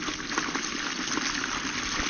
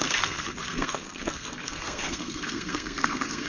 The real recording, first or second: first